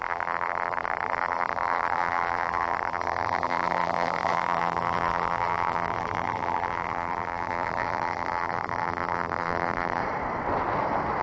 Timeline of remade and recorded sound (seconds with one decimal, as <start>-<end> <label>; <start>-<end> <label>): 0.0-10.0 remade; 10.0-11.2 recorded

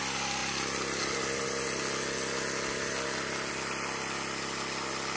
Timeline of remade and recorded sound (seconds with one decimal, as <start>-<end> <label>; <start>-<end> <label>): 0.0-5.2 recorded

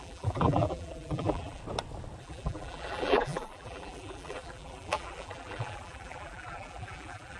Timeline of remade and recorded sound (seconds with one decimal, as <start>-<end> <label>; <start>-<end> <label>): 0.0-1.6 remade; 1.6-2.2 recorded; 2.2-7.4 remade

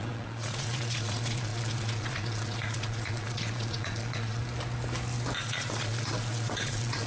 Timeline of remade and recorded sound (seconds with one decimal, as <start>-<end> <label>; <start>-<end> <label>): 0.0-4.4 remade; 4.4-5.4 recorded; 5.4-7.1 remade